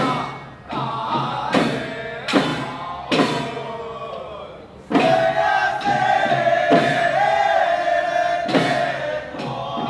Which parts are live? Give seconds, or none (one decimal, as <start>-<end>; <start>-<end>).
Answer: 0.0-9.9